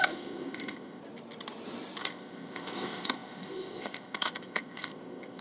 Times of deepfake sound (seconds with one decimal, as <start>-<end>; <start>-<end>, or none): 0.0-1.0; 2.0-5.4